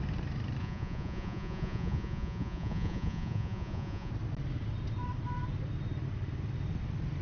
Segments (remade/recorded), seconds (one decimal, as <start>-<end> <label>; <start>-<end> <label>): 0.0-0.6 recorded; 0.6-4.1 remade; 4.1-7.2 recorded